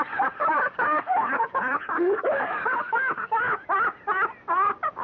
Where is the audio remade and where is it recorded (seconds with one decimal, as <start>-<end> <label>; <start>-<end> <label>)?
0.0-0.4 recorded; 0.4-3.4 remade; 3.4-5.0 recorded